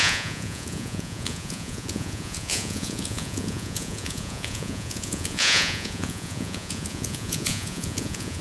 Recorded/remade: remade